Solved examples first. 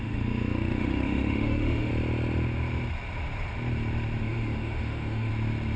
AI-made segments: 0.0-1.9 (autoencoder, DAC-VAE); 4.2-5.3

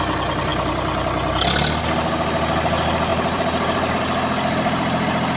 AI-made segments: 3.1-3.9 (vocoder, BigVGAN v2)

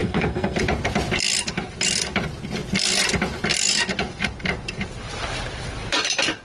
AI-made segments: 0.0-0.6 (codec, SNAC)